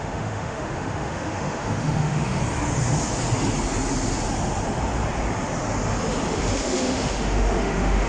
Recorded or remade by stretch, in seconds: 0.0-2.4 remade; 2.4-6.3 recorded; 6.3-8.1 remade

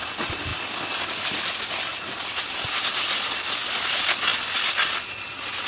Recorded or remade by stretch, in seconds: 0.0-5.7 recorded